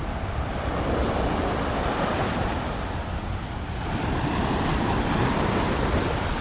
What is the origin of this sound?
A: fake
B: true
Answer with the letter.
B